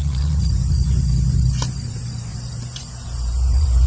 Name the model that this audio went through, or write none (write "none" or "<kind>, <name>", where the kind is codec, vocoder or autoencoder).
vocoder, Vocos